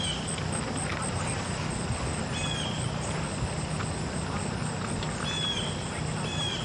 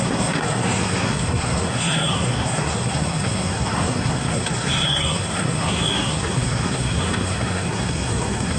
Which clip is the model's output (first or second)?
second